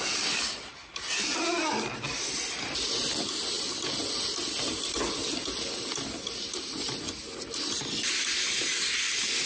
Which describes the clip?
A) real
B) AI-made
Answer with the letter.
A